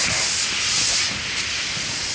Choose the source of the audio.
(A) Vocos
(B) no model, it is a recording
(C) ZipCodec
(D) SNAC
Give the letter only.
B